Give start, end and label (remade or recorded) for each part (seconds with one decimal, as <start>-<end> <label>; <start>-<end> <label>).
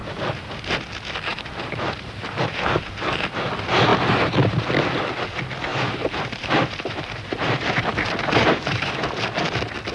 0.0-0.7 remade; 0.7-1.3 recorded; 1.3-3.5 remade; 3.5-5.7 recorded; 5.7-9.0 remade; 9.0-9.9 recorded